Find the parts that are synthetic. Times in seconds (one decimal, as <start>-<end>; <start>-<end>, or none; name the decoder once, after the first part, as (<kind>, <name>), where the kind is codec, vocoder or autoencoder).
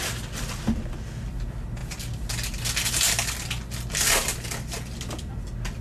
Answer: none